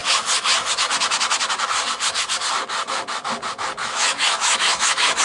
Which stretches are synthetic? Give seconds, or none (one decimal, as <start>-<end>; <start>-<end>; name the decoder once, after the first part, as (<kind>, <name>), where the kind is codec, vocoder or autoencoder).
3.8-5.2 (autoencoder, DAC-VAE)

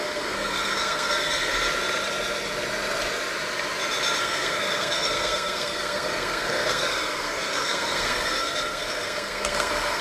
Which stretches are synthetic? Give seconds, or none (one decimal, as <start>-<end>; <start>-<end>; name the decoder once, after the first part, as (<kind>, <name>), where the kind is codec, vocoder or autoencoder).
0.0-1.5 (codec, SNAC); 4.2-10.0